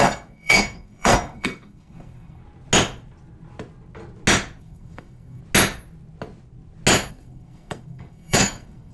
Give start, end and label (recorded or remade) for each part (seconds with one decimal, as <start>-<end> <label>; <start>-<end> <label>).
0.0-2.4 remade; 2.4-4.6 recorded; 4.6-5.4 remade; 5.4-7.1 recorded; 7.1-8.9 remade